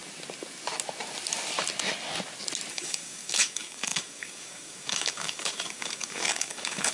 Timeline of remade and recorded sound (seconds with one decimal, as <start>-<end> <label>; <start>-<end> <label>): 0.0-2.7 recorded; 2.7-6.9 remade